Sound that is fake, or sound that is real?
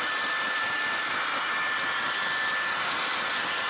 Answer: real